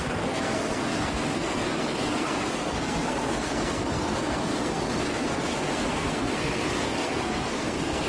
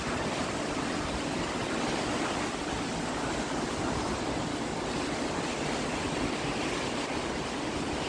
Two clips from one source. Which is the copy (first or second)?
first